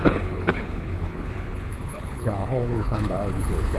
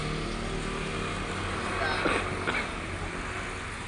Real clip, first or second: second